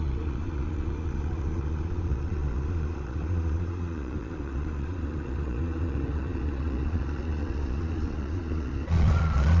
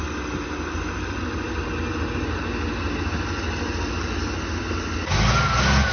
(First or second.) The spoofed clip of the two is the first